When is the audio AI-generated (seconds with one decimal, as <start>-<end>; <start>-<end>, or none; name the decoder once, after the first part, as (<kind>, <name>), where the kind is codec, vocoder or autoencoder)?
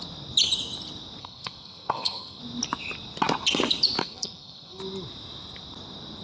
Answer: 1.2-2.4 (codec, SNAC); 4.0-4.8